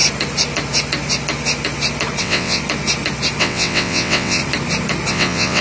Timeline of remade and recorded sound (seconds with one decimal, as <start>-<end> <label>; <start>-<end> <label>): 0.0-2.2 recorded; 2.2-2.6 remade; 2.6-3.4 recorded; 3.4-4.4 remade; 4.4-5.1 recorded; 5.1-5.6 remade